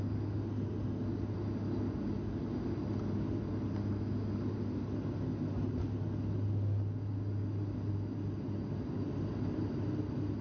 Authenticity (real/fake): real